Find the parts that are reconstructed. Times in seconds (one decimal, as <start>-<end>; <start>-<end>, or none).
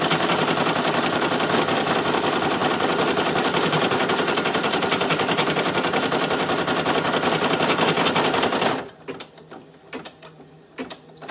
none